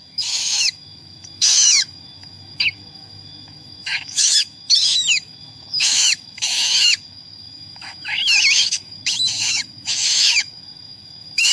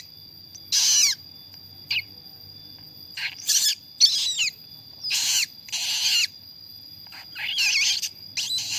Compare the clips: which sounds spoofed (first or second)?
first